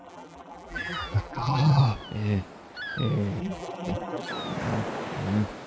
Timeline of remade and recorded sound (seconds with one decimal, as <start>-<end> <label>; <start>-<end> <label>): 0.0-1.8 remade; 1.8-3.4 recorded; 3.4-4.3 remade; 4.3-5.7 recorded